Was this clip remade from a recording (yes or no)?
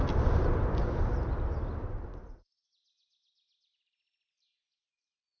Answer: no